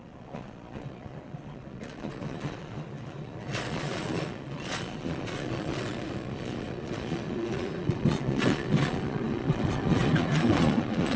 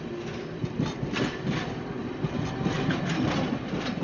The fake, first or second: first